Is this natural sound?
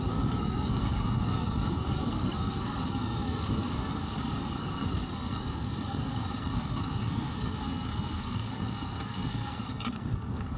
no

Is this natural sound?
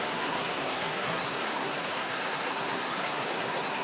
no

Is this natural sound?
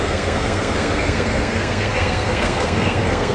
no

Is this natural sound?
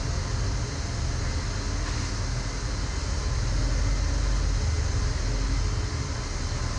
yes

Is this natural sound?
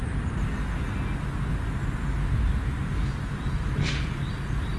yes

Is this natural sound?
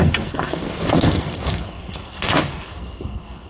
no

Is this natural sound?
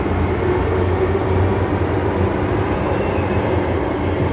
yes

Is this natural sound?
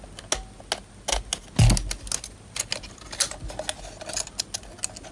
yes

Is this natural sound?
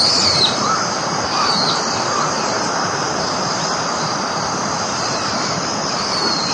yes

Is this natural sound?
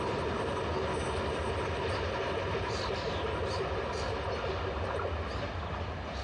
yes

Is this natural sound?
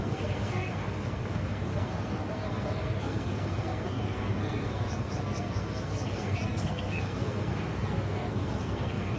no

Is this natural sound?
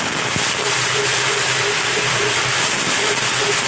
yes